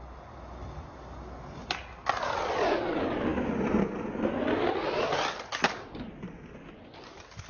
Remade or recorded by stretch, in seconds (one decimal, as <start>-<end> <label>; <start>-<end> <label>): 0.0-7.5 recorded